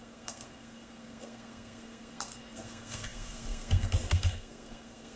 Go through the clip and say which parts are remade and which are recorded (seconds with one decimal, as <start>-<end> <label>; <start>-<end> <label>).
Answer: 0.0-5.2 remade